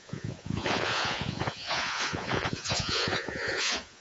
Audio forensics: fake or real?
fake